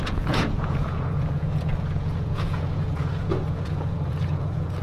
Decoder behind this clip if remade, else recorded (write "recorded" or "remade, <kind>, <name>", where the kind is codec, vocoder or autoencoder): remade, vocoder, Vocos